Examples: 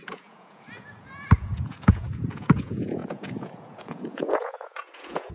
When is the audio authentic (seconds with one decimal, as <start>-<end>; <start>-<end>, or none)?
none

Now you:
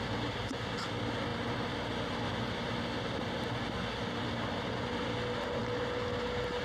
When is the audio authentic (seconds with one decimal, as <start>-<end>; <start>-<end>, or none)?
0.0-6.6

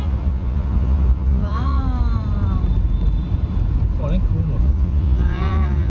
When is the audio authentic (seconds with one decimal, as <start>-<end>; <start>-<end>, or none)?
1.8-4.6

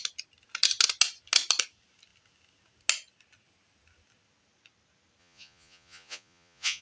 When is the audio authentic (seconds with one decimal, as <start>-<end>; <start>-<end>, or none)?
0.0-5.2

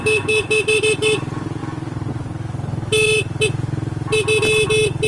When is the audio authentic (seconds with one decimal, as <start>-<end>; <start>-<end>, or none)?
0.0-5.1

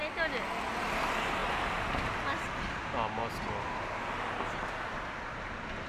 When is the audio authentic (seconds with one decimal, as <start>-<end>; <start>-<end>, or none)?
0.0-5.9